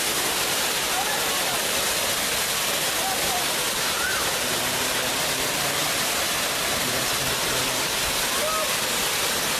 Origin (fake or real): real